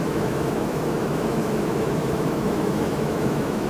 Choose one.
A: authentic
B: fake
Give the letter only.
B